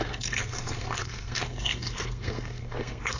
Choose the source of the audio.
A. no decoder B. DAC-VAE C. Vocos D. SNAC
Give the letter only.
D